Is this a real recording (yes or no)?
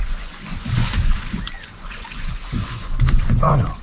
no